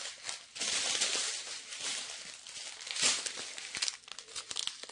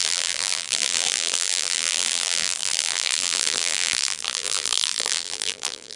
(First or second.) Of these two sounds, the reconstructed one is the second